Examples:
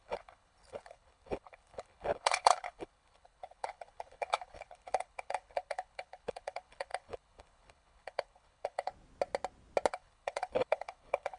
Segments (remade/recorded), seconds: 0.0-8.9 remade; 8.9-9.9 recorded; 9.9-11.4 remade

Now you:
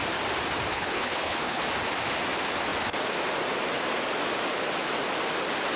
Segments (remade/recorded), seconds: 0.0-0.7 recorded; 0.7-1.6 remade; 1.6-5.8 recorded

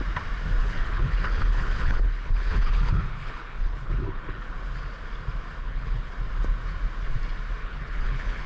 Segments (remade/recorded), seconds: 0.0-0.6 recorded; 0.6-4.5 remade; 4.5-5.6 recorded; 5.6-6.1 remade; 6.1-7.6 recorded; 7.6-8.5 remade